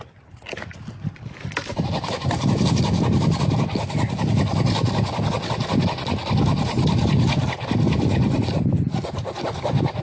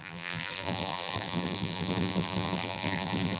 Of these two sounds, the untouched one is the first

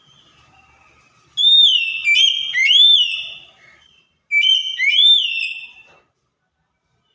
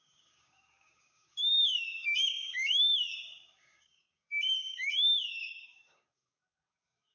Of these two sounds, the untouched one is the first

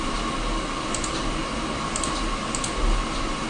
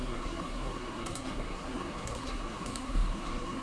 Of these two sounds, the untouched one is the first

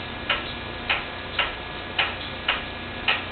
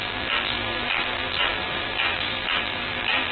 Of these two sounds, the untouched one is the first